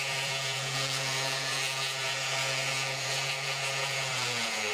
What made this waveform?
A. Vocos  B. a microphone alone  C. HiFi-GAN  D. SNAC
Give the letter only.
A